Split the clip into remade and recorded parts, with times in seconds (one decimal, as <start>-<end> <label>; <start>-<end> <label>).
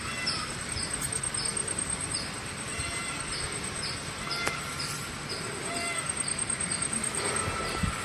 0.0-8.0 recorded